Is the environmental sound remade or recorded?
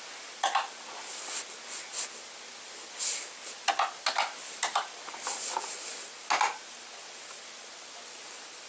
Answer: recorded